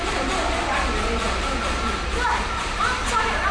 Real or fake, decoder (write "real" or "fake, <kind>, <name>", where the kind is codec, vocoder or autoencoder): real